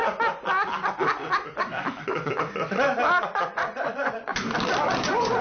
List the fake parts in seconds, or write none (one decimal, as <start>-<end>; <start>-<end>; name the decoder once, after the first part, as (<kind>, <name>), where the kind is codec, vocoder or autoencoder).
3.2-4.3 (vocoder, Vocos); 5.0-5.4